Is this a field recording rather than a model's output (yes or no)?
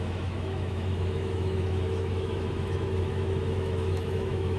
no